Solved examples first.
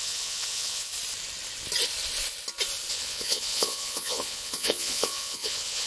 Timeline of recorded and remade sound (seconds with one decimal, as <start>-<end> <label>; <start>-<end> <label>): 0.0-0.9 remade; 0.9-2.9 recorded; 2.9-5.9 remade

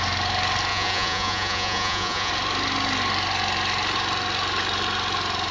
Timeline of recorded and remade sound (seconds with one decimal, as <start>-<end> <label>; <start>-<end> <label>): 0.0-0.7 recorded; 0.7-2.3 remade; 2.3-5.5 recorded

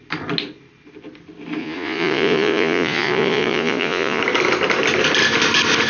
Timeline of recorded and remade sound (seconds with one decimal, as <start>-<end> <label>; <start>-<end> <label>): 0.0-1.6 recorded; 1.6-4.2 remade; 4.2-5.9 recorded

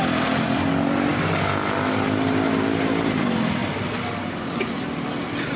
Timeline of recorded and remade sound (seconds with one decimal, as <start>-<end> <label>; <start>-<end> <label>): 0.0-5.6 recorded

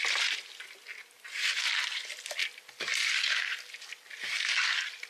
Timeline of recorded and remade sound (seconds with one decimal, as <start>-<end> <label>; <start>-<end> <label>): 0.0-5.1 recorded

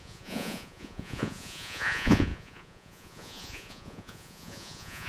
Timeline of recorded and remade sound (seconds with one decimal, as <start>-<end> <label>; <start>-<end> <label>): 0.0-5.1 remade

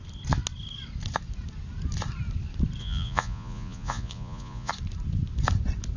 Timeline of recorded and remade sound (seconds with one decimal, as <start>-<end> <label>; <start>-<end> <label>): 0.0-2.8 recorded; 2.8-4.7 remade; 4.7-6.0 recorded

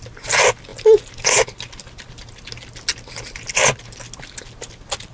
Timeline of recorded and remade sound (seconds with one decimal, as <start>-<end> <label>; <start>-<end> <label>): 0.0-5.1 recorded